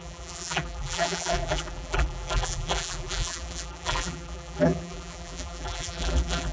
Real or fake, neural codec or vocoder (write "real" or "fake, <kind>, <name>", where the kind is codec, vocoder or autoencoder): fake, vocoder, BigVGAN v2